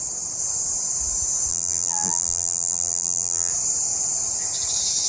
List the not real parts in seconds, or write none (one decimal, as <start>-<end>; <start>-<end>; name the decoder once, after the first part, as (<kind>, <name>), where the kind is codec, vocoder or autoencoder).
1.5-3.5 (vocoder, BigVGAN v2)